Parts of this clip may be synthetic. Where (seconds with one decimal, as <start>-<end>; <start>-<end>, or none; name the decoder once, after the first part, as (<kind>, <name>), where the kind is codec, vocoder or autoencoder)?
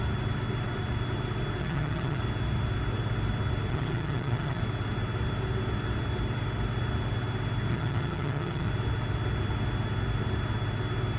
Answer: 1.6-2.2 (vocoder, HiFi-GAN); 3.7-4.6; 7.7-8.7